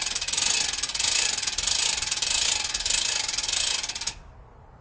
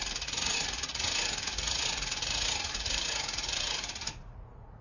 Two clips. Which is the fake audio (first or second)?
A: second